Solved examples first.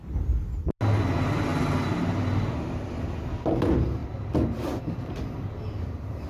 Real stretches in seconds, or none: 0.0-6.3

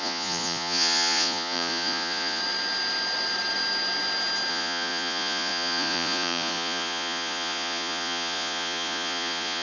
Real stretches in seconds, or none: 2.4-4.5

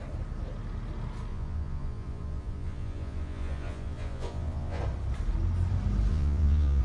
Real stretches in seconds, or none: 0.0-1.3; 4.8-6.1